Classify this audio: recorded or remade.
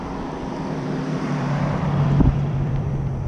remade